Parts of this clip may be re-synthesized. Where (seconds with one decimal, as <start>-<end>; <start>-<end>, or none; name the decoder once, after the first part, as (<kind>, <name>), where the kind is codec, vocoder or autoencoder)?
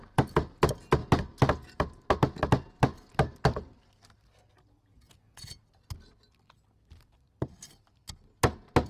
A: 4.9-5.6 (vocoder, Vocos)